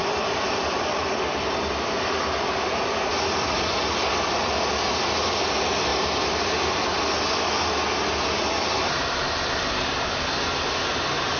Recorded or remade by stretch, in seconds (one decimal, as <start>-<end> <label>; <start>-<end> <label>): 0.0-3.0 remade; 3.0-4.0 recorded; 4.0-4.7 remade; 4.7-5.9 recorded; 5.9-7.5 remade; 7.5-11.4 recorded